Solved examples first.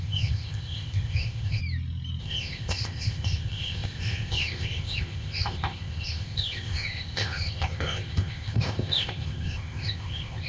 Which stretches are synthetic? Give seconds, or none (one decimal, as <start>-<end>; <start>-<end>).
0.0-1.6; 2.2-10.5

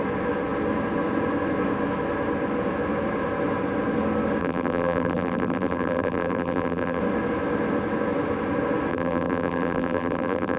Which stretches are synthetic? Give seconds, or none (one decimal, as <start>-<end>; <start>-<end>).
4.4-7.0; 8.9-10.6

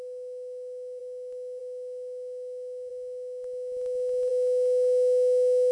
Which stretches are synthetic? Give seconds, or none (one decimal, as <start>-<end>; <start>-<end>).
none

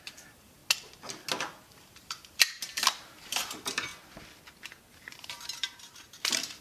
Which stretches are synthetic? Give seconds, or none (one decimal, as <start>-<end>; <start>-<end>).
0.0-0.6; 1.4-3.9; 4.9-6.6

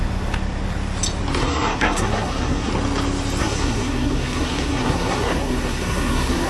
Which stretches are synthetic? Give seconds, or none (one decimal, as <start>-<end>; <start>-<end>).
1.4-2.7; 3.4-6.5

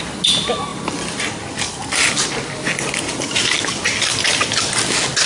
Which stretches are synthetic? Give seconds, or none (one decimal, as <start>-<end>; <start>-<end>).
none

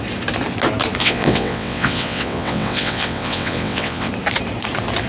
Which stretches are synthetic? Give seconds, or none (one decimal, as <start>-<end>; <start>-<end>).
1.0-4.1